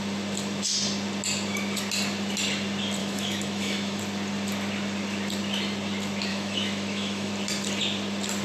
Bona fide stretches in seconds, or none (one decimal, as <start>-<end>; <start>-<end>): 0.0-3.0; 4.0-6.3; 7.3-8.4